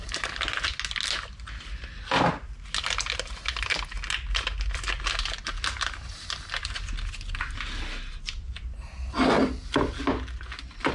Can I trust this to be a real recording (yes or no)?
yes